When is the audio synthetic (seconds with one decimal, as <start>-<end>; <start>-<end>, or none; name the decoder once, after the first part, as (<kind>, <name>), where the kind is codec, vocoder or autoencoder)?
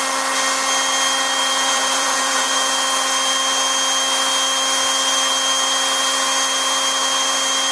1.5-2.7 (vocoder, Vocos)